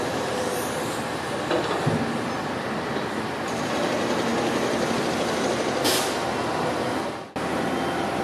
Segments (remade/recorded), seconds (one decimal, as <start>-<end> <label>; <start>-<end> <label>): 0.0-2.4 recorded; 2.4-3.0 remade; 3.0-8.2 recorded